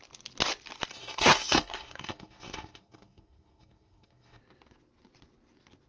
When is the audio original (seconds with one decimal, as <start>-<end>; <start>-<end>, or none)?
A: 0.0-0.9; 4.4-5.9